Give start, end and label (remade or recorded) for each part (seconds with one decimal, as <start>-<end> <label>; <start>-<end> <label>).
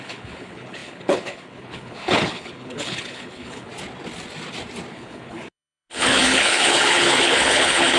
0.0-3.7 remade; 3.7-4.9 recorded; 4.9-8.0 remade